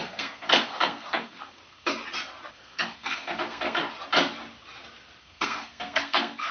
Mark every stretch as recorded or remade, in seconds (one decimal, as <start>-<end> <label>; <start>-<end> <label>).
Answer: 0.0-1.9 remade; 1.9-2.5 recorded; 2.5-3.8 remade; 3.8-5.2 recorded; 5.2-6.5 remade